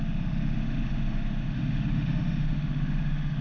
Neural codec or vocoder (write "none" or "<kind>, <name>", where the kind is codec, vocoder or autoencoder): autoencoder, DAC-VAE